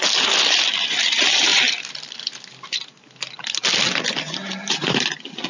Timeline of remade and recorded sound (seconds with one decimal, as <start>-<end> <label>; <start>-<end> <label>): 0.0-1.5 remade; 1.5-4.8 recorded; 4.8-5.5 remade